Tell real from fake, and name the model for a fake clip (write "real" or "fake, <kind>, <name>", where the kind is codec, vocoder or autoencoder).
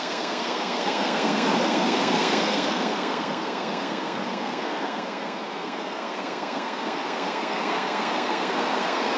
fake, codec, SNAC